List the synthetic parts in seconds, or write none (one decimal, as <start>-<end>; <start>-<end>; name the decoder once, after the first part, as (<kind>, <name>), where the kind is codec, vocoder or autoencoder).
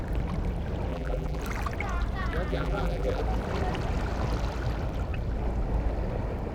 0.9-1.4 (vocoder, BigVGAN v2); 2.5-3.2